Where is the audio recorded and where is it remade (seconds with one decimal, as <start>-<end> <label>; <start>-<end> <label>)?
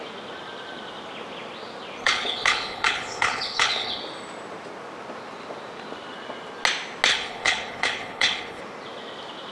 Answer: 0.0-2.0 recorded; 2.0-4.0 remade; 4.0-7.1 recorded; 7.1-8.6 remade; 8.6-9.5 recorded